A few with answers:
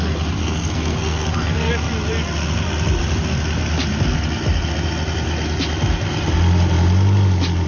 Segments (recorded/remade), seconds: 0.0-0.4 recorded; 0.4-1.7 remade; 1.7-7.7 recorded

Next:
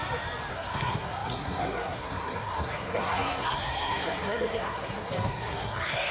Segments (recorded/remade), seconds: 0.0-0.5 recorded; 0.5-6.1 remade

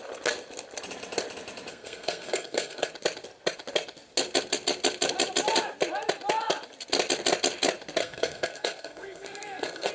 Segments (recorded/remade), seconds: 0.0-1.7 recorded; 1.7-2.9 remade; 2.9-8.0 recorded; 8.0-9.9 remade

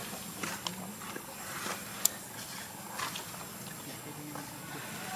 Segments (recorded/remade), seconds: 0.0-5.2 recorded

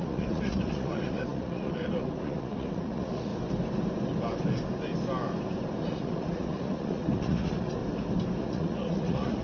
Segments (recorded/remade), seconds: 0.0-3.3 remade; 3.3-5.8 recorded; 5.8-7.8 remade; 7.8-8.4 recorded; 8.4-9.4 remade